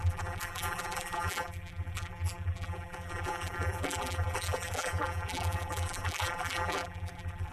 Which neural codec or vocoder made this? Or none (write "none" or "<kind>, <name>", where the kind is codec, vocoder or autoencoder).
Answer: vocoder, BigVGAN v2